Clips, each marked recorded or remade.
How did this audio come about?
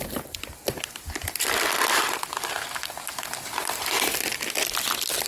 recorded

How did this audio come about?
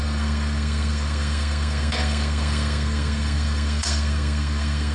remade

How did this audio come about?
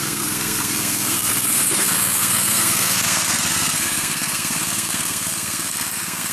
remade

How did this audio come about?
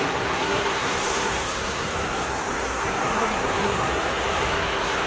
remade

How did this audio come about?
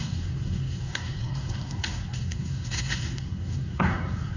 remade